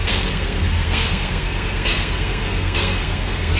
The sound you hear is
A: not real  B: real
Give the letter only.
A